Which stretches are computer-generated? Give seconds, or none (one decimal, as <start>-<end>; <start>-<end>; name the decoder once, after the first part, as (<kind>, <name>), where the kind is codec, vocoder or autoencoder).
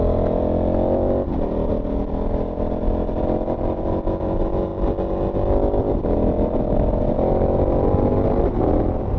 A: 0.0-4.7 (vocoder, BigVGAN v2); 5.8-9.2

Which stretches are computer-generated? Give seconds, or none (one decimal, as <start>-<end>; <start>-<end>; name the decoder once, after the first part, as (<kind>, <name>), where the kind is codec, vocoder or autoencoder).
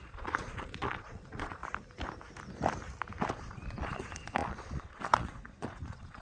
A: 0.0-1.6 (vocoder, Vocos); 3.3-6.2